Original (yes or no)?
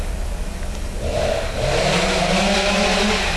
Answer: yes